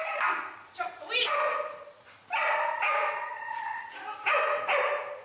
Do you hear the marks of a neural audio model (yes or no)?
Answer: no